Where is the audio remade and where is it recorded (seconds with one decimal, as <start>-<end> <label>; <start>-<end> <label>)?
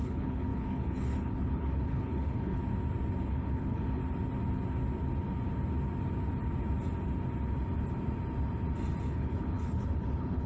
0.0-2.6 remade; 2.6-3.2 recorded; 3.2-4.0 remade; 4.0-9.1 recorded; 9.1-10.5 remade